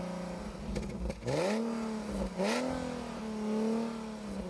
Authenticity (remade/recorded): recorded